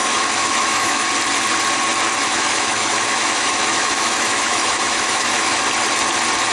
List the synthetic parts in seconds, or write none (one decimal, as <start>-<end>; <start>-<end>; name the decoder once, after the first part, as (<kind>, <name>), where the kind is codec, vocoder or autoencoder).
0.0-1.1 (autoencoder, DAC-VAE); 2.2-5.6